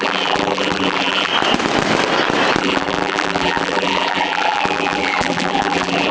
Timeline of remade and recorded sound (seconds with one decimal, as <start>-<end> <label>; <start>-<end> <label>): 0.0-1.3 remade; 1.3-2.6 recorded; 2.6-6.1 remade

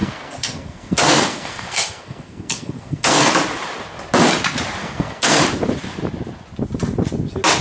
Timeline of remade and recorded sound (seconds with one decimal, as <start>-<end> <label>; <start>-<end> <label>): 0.0-3.3 remade; 3.3-4.8 recorded; 4.8-5.4 remade; 5.4-7.6 recorded

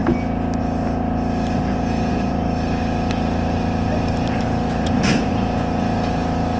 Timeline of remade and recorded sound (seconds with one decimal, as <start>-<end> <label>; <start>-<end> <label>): 0.0-2.1 recorded; 2.1-5.3 remade; 5.3-6.6 recorded

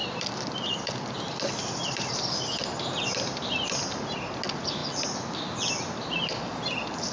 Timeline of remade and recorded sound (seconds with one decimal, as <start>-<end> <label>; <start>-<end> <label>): 0.0-1.1 remade; 1.1-7.1 recorded

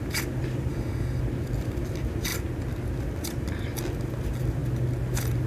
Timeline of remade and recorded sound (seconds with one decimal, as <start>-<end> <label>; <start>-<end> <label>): 0.0-0.7 recorded; 0.7-1.2 remade; 1.2-5.5 recorded